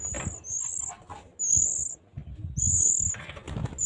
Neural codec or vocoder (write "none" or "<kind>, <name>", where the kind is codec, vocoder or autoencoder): none